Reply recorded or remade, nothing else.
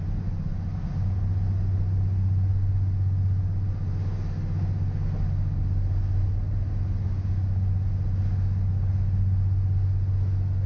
recorded